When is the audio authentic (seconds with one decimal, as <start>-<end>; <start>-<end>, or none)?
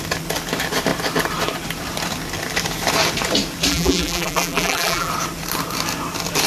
0.0-3.7; 5.1-6.5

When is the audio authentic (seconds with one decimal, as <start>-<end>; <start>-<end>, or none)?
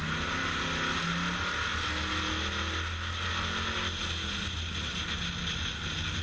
0.0-6.2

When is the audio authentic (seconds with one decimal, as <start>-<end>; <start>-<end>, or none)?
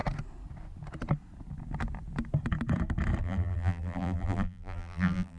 0.0-3.2